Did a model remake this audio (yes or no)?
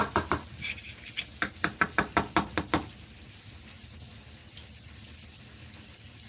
no